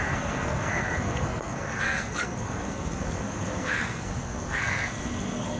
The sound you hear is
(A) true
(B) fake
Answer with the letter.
B